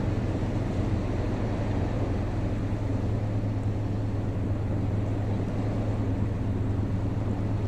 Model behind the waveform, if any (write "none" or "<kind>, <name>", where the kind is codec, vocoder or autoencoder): none